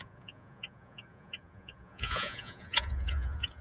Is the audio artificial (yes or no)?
yes